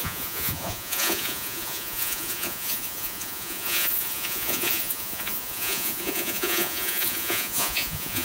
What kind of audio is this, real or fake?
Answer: fake